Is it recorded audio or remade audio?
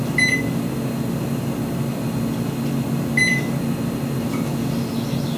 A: recorded